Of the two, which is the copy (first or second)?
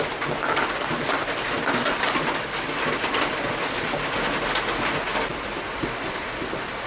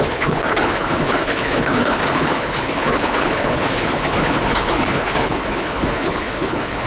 second